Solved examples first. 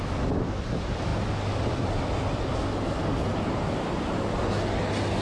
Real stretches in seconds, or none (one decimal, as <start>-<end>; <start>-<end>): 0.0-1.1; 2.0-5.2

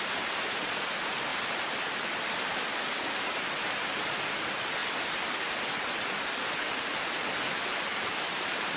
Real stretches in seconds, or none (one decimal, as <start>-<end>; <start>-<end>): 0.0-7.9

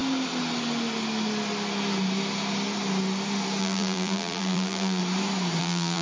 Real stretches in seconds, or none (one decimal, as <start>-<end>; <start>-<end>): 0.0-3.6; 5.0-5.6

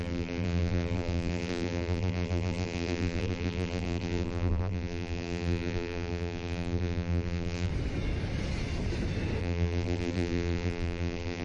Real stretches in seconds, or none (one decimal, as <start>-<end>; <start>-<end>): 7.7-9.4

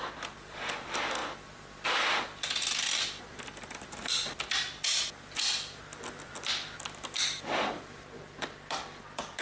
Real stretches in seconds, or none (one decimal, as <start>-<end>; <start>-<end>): 0.0-9.4

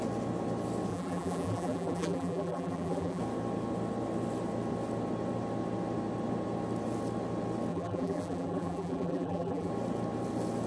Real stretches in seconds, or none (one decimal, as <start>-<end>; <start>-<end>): 0.0-0.9; 3.2-7.7; 9.7-10.7

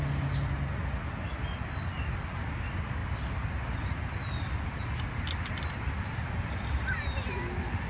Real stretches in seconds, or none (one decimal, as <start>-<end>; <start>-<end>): 0.0-7.9